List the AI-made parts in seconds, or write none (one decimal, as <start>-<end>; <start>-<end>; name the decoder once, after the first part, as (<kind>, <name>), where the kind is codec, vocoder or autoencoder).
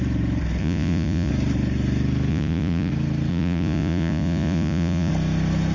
0.6-1.3 (vocoder, Vocos); 2.3-2.9; 3.3-5.1